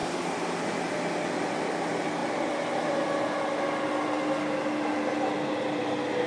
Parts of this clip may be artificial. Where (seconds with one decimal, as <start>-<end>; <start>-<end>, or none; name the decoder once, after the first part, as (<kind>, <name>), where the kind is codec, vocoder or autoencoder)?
none